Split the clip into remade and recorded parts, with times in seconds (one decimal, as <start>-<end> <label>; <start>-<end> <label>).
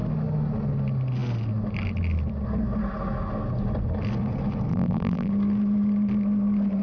0.0-4.7 recorded; 4.7-5.3 remade; 5.3-6.8 recorded